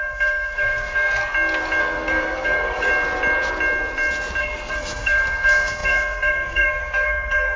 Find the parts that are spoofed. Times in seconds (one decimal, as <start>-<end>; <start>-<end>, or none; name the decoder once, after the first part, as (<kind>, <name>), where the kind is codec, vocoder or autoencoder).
0.0-1.2 (codec, SNAC); 1.8-2.9; 4.4-7.6